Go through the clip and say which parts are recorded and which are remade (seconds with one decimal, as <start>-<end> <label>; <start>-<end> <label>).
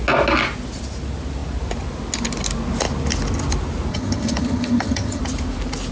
0.0-3.9 recorded; 3.9-5.2 remade; 5.2-5.9 recorded